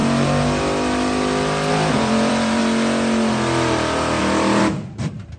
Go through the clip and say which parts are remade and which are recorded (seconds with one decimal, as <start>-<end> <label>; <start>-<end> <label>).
0.0-1.7 recorded; 1.7-2.6 remade; 2.6-4.2 recorded; 4.2-5.4 remade